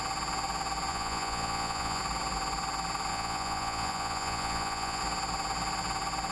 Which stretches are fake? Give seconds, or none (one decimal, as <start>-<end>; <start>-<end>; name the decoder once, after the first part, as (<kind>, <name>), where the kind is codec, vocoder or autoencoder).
0.9-2.0 (vocoder, Vocos); 3.1-5.0